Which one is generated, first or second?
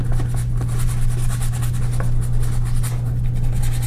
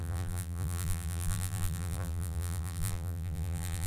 second